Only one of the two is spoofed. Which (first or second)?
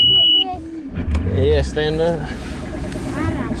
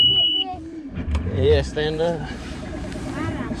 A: second